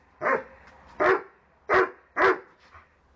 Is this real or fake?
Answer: real